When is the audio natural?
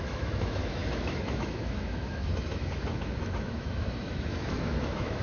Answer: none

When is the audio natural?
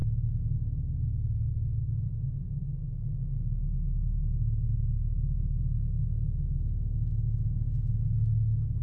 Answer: 0.0-2.7; 5.6-8.8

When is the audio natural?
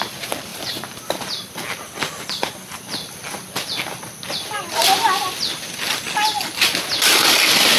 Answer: 0.0-7.8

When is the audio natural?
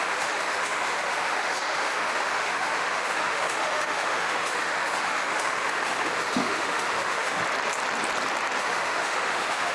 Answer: 7.4-8.6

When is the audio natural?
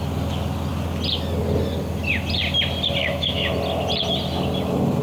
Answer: 0.0-3.0; 3.5-5.0